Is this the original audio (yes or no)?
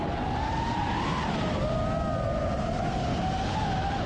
yes